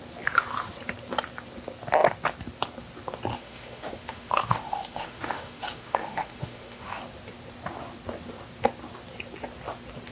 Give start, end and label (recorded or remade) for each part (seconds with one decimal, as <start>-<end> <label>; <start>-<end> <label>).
0.0-3.3 recorded; 3.3-7.0 remade; 7.0-10.1 recorded